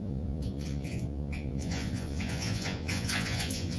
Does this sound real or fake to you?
fake